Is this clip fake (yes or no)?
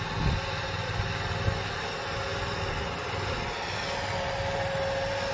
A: no